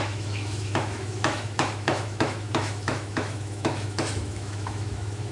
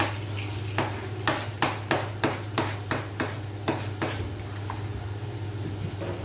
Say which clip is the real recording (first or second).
second